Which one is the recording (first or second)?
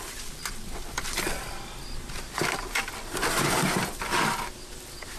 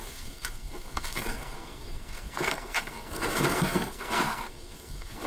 first